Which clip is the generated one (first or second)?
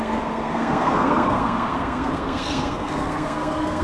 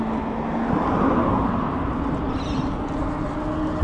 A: first